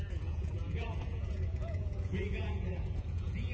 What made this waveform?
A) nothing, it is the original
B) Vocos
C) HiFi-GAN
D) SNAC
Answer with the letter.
B